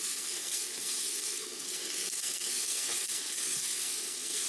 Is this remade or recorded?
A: remade